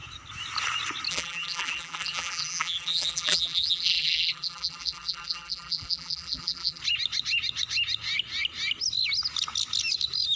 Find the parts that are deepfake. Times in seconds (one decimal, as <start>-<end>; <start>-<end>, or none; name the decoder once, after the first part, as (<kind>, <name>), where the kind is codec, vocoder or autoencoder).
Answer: 1.1-6.8 (vocoder, BigVGAN v2)